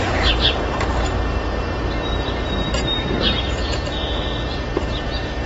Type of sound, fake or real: fake